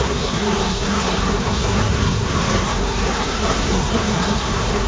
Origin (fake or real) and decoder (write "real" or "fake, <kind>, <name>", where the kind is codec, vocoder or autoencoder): fake, codec, SNAC